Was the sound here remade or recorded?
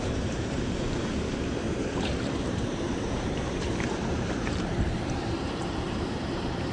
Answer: remade